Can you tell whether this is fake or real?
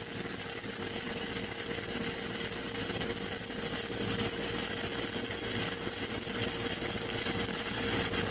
real